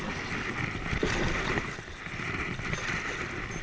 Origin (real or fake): real